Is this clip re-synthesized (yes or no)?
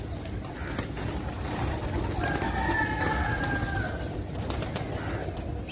no